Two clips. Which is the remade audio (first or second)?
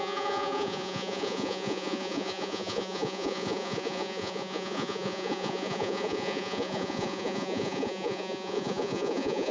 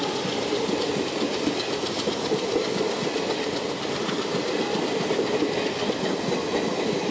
first